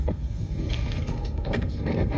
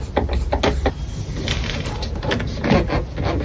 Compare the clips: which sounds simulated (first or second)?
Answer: first